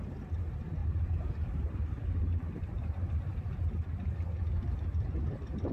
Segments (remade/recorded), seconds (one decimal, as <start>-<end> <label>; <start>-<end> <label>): 0.0-0.8 recorded; 0.8-3.2 remade; 3.2-4.7 recorded; 4.7-5.7 remade